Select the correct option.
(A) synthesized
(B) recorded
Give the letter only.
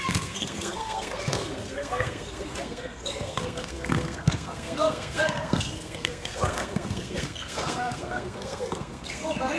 A